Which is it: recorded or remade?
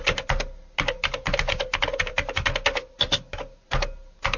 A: recorded